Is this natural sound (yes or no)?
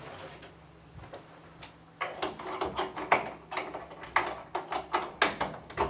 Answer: yes